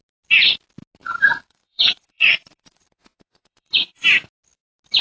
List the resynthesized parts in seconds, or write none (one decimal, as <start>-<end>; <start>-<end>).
1.0-4.0